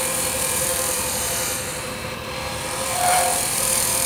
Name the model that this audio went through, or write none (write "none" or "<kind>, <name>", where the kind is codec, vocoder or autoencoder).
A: vocoder, BigVGAN v2